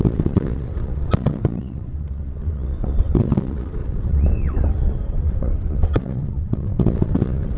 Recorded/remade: remade